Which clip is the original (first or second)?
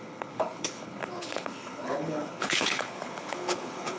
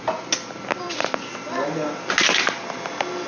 second